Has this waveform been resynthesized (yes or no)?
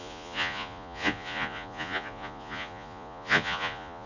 yes